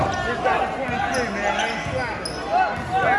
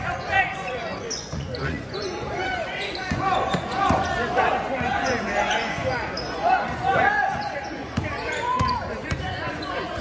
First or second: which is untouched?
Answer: first